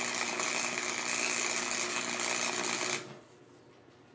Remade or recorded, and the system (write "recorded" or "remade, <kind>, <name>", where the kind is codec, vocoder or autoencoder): recorded